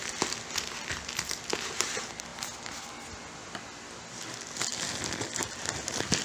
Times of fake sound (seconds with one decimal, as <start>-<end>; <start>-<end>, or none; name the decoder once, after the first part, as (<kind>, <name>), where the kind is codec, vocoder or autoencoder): none